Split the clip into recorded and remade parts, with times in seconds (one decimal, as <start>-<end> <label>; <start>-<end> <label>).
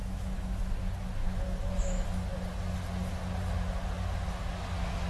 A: 0.0-0.7 remade; 0.7-1.2 recorded; 1.2-1.8 remade; 1.8-5.1 recorded